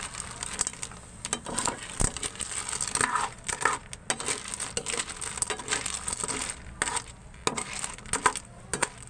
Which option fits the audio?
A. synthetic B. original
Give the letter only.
B